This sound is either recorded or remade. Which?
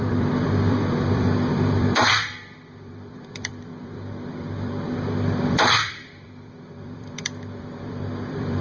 remade